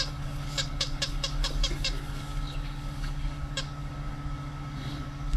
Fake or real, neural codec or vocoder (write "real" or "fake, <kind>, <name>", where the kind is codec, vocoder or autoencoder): fake, codec, DAC